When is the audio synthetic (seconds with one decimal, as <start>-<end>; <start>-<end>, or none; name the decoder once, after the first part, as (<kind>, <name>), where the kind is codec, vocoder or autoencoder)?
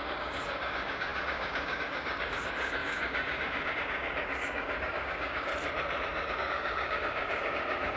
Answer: 0.0-5.5 (codec, DAC); 6.3-8.0